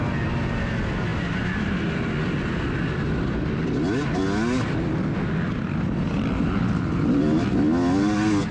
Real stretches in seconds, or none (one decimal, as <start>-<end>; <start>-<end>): 0.0-8.5